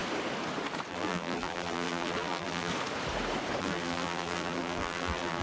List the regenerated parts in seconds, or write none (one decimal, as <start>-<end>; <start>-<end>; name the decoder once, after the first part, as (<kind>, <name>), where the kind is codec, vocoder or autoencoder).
0.9-2.7 (vocoder, BigVGAN v2); 3.6-5.4